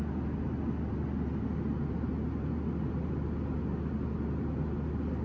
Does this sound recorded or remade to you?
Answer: recorded